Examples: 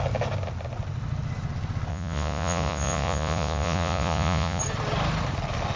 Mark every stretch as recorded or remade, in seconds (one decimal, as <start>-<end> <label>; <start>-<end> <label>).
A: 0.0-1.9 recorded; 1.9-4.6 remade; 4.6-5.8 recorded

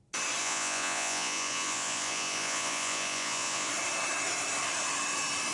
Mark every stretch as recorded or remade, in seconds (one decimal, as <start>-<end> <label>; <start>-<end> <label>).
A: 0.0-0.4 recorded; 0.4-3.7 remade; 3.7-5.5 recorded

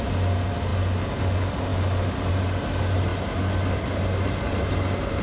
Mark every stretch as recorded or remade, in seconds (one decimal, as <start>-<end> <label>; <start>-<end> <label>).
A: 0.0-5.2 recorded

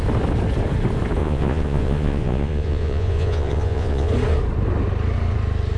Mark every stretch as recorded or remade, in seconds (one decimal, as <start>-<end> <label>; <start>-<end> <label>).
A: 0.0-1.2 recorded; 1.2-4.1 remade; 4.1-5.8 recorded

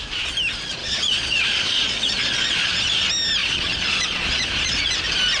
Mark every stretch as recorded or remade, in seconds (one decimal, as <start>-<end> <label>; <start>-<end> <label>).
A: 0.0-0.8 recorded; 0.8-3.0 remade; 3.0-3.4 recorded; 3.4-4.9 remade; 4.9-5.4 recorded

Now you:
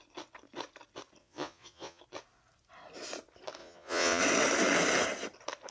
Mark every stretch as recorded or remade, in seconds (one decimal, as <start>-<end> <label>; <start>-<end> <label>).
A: 0.0-1.2 recorded; 1.2-2.0 remade; 2.0-3.6 recorded; 3.6-4.2 remade; 4.2-5.7 recorded